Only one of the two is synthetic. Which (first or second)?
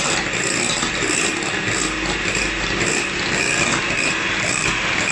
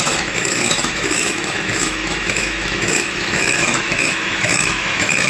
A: second